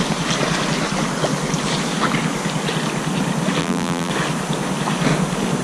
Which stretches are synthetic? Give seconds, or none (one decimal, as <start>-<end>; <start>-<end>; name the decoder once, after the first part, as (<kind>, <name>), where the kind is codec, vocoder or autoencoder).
3.6-4.1 (vocoder, BigVGAN v2)